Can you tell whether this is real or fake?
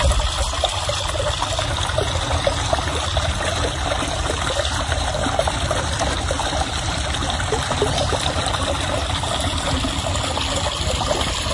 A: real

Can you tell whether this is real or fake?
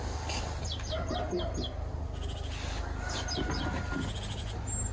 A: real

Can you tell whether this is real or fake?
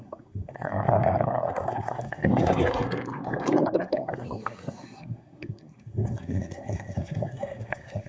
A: fake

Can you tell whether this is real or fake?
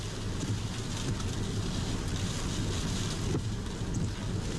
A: real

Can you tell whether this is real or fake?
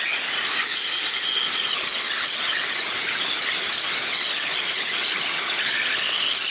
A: real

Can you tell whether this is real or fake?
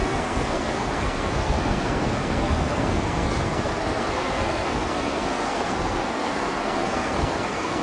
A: fake